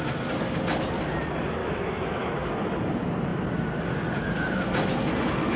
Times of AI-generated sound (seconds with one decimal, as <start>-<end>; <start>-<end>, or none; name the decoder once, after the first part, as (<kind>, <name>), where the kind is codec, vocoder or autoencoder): 1.6-2.5 (autoencoder, DAC-VAE)